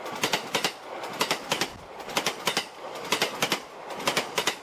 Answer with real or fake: real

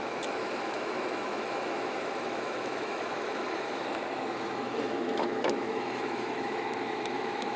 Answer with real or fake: fake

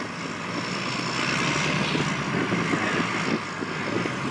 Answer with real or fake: real